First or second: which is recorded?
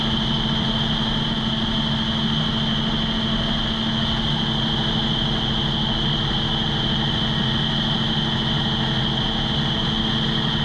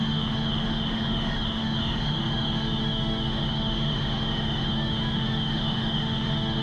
first